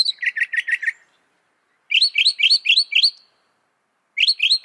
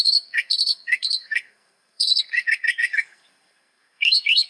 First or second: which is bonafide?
first